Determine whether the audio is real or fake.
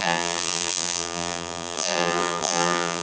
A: fake